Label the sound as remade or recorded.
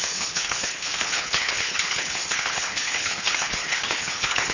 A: remade